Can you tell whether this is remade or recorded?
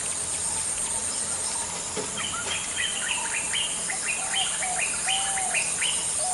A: recorded